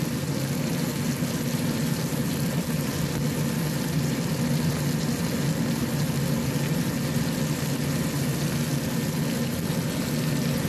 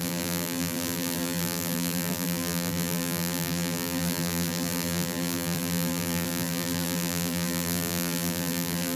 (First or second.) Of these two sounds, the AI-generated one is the second